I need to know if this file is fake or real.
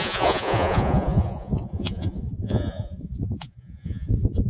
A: fake